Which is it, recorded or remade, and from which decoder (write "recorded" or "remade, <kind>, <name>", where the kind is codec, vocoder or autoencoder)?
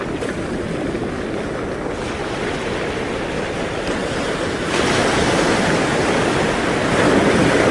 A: recorded